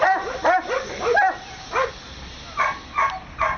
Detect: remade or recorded recorded